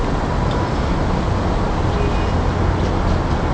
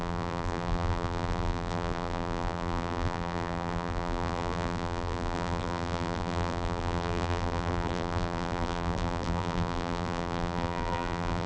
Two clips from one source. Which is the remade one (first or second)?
second